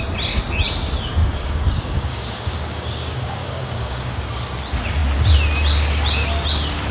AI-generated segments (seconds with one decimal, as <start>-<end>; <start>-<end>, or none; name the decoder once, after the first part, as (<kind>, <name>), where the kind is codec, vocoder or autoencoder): 1.2-4.2 (codec, DAC)